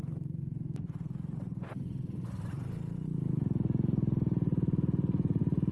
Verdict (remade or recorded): recorded